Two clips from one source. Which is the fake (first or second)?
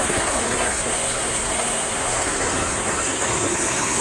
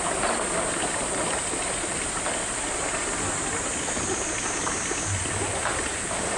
first